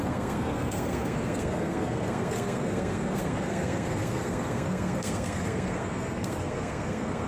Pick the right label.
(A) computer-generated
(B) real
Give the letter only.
A